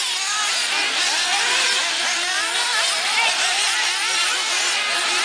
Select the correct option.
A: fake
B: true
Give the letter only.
B